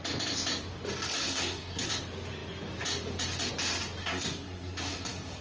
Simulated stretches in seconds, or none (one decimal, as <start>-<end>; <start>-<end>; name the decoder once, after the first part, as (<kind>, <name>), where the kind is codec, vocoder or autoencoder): 1.2-1.9 (codec, SNAC); 4.0-5.4